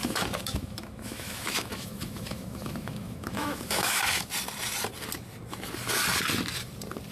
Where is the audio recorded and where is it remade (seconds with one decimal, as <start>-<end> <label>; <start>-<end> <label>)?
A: 0.0-4.3 remade; 4.3-7.1 recorded